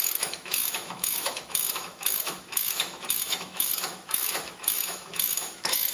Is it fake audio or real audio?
fake